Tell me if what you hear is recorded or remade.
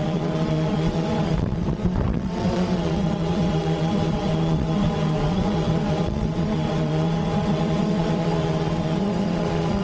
remade